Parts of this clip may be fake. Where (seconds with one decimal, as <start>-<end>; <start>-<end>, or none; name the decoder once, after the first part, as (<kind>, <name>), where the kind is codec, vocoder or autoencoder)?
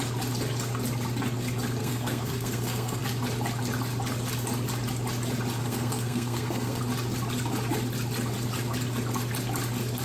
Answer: 1.8-3.0 (codec, SNAC); 5.6-6.8